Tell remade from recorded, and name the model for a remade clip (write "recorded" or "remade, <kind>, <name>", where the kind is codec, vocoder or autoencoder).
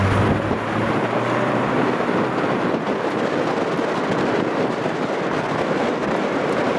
recorded